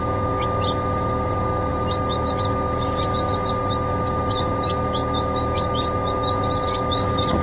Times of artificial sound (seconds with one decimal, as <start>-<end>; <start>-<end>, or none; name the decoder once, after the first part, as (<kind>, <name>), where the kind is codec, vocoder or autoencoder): none